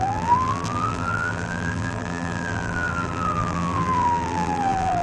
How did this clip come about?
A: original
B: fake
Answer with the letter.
B